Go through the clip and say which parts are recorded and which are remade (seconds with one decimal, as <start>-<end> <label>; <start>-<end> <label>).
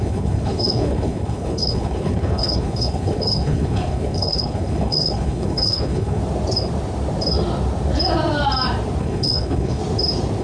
0.0-6.2 remade; 6.2-9.0 recorded; 9.0-9.8 remade; 9.8-10.4 recorded